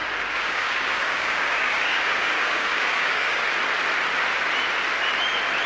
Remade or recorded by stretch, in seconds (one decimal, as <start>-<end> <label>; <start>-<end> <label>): 0.0-3.4 remade; 3.4-5.7 recorded

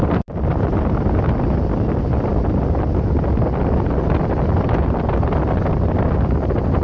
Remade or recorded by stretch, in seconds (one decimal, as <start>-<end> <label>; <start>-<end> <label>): 0.0-6.8 recorded

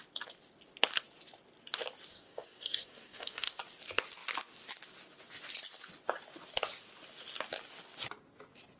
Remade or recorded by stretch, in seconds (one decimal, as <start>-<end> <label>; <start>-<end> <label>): 0.0-2.1 recorded; 2.1-3.6 remade; 3.6-8.8 recorded

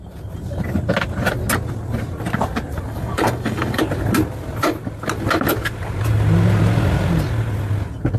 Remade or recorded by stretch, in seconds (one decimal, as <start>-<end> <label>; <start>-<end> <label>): 0.0-2.9 recorded; 2.9-3.8 remade; 3.8-8.2 recorded

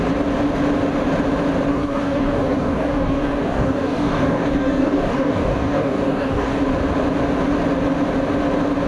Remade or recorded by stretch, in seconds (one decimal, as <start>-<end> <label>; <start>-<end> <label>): 0.0-1.7 recorded; 1.7-6.6 remade; 6.6-8.9 recorded